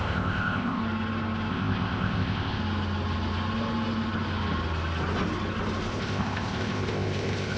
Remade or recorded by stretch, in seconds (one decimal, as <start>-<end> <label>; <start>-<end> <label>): 0.0-0.8 remade; 0.8-1.5 recorded; 1.5-2.6 remade; 2.6-5.9 recorded; 5.9-7.6 remade